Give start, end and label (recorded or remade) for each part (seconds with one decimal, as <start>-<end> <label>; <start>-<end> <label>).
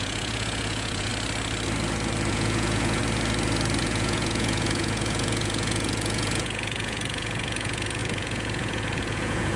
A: 0.0-1.1 remade; 1.1-2.3 recorded; 2.3-3.0 remade; 3.0-3.8 recorded; 3.8-9.6 remade